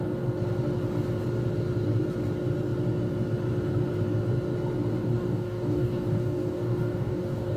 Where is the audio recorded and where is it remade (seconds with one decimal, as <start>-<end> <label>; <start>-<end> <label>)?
0.0-5.0 recorded; 5.0-7.6 remade